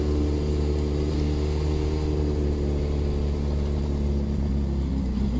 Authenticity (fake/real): real